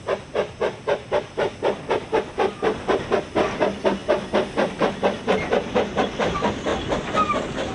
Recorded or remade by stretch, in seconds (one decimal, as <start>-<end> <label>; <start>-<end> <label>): 0.0-7.7 recorded